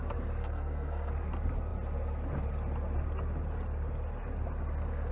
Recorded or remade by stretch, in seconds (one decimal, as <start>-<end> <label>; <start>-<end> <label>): 0.0-0.4 recorded; 0.4-1.1 remade; 1.1-5.1 recorded